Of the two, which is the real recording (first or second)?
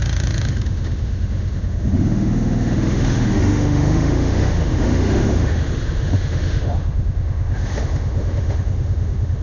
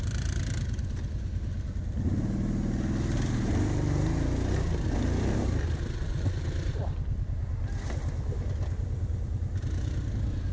second